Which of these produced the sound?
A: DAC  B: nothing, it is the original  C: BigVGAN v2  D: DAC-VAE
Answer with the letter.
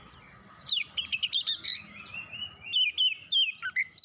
B